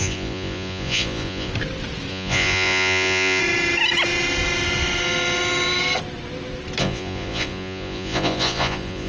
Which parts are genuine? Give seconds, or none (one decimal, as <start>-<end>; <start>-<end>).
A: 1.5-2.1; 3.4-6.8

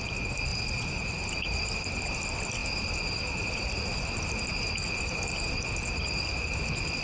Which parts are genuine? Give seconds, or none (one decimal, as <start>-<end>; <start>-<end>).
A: 0.0-7.0

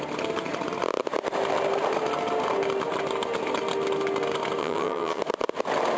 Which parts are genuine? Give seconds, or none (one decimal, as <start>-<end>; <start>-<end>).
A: 0.0-4.6; 5.2-6.0